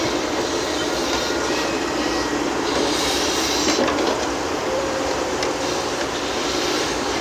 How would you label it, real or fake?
fake